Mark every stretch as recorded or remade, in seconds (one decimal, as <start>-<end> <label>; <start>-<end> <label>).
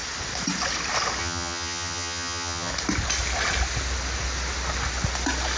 0.0-1.2 recorded; 1.2-2.7 remade; 2.7-5.6 recorded